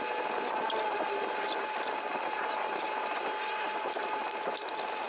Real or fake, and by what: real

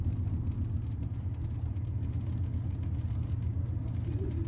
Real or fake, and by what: real